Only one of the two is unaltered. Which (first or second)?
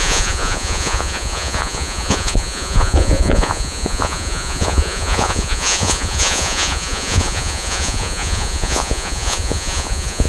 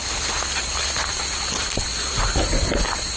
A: second